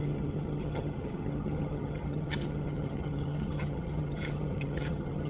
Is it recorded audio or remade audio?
remade